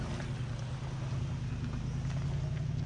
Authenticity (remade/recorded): recorded